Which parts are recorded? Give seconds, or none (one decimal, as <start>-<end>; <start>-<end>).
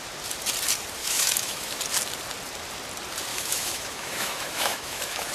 0.0-1.0; 1.8-3.3